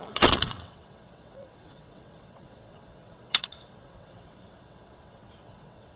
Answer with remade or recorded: remade